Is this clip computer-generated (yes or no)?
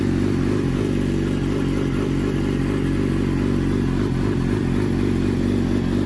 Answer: no